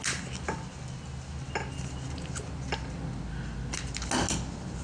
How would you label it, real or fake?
real